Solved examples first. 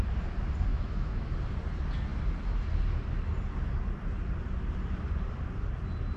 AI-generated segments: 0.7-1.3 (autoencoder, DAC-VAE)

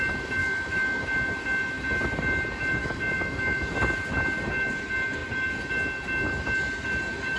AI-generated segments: 0.4-1.0 (autoencoder, DAC-VAE); 2.8-3.6

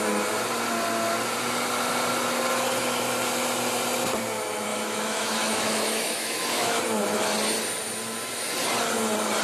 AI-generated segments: 4.7-6.8 (autoencoder, DAC-VAE)

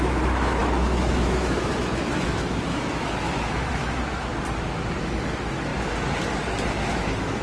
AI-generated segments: 0.0-4.3 (autoencoder, DAC-VAE); 5.0-5.7; 6.7-7.4

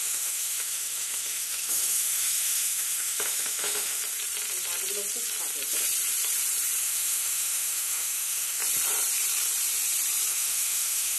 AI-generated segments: 0.0-4.0 (autoencoder, DAC-VAE); 6.8-8.6; 10.3-11.2